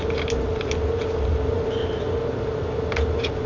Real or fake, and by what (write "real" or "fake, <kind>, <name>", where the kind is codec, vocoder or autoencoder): real